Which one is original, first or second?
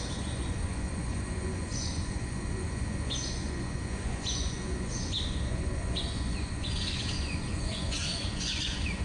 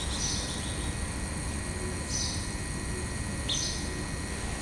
second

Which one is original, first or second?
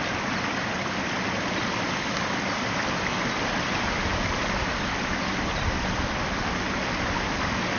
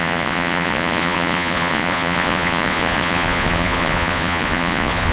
first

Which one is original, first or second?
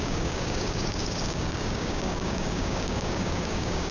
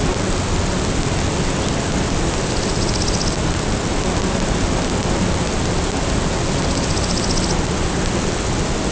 second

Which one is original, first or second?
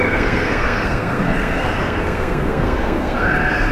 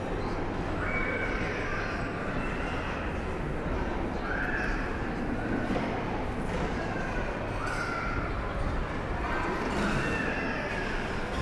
second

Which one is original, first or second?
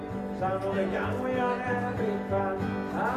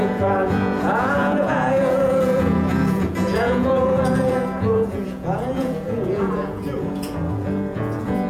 first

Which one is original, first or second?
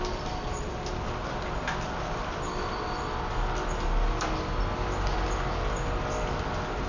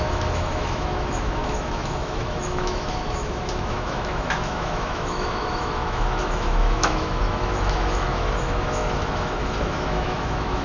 first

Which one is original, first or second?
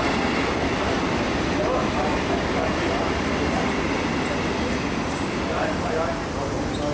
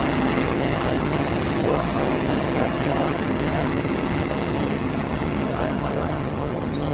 first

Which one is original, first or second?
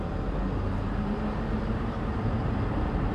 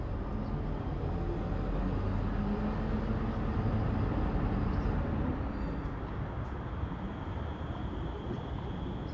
second